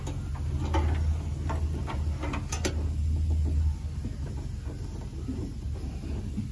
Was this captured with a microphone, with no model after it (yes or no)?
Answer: yes